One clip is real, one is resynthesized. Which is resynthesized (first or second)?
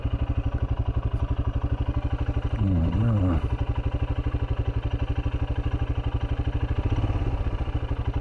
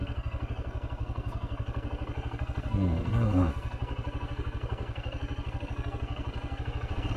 second